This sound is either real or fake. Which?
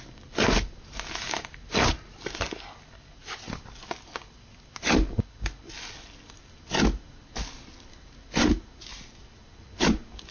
real